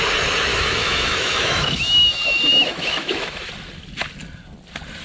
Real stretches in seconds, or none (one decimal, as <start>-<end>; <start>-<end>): 0.0-0.5; 3.5-5.0